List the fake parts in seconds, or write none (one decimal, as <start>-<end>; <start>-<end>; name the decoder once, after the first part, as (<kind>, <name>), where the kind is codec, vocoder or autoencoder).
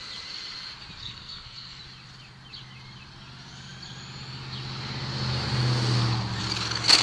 1.0-1.8 (codec, SNAC)